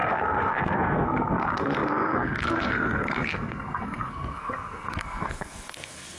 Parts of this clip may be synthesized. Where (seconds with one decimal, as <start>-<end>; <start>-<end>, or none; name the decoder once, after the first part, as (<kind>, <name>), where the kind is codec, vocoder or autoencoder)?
0.0-6.2 (codec, SNAC)